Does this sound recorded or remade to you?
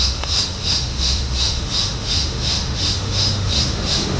remade